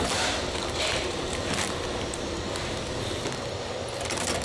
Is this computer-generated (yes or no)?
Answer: no